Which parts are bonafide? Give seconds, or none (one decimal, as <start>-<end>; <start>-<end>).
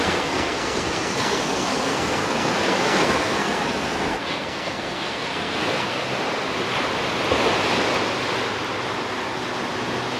6.0-10.2